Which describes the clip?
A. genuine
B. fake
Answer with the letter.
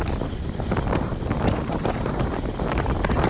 A